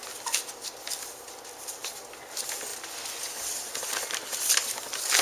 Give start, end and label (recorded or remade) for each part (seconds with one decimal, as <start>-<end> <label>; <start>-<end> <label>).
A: 0.0-5.2 recorded